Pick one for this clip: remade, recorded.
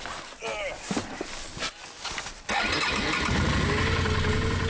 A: recorded